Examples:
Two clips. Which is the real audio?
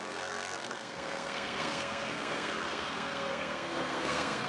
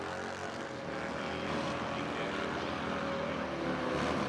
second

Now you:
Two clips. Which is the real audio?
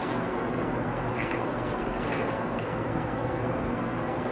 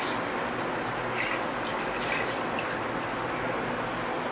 second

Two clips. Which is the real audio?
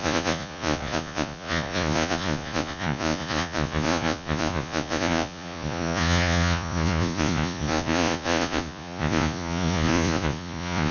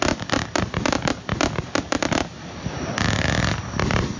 second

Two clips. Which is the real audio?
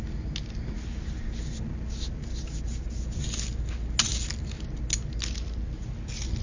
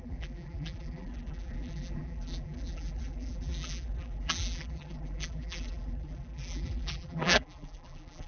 first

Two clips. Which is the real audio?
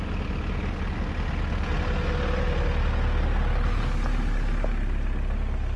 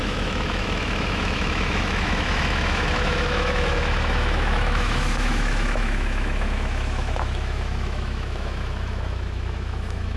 first